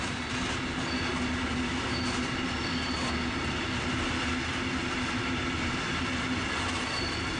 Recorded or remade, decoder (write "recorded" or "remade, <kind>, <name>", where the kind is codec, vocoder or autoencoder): recorded